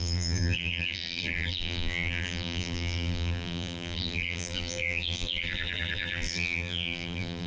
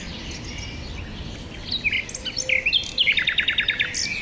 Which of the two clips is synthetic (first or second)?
first